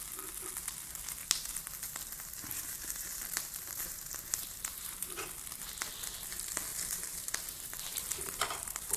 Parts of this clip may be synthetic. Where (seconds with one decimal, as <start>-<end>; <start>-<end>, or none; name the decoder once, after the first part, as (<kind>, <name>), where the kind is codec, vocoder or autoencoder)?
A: 1.2-5.3 (vocoder, BigVGAN v2); 6.7-9.0